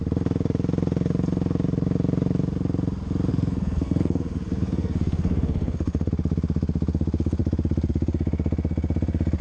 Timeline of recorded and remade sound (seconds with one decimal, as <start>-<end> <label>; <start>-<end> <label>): 0.0-3.3 recorded; 3.3-6.1 remade; 6.1-9.4 recorded